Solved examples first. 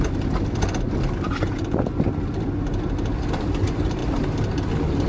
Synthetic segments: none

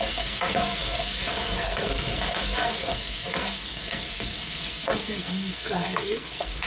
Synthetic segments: 0.0-6.7 (codec, SNAC)

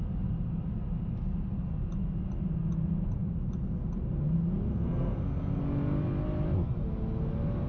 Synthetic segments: 4.7-5.6 (codec, SNAC)

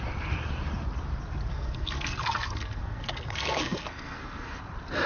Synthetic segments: 1.5-4.6 (codec, SNAC)

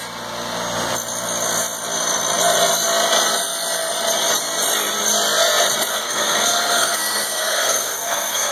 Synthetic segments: 5.9-8.5 (codec, SNAC)